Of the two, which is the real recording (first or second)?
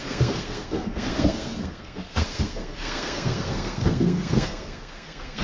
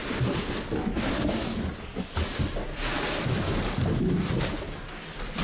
second